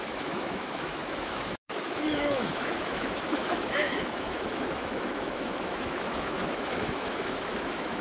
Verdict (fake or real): fake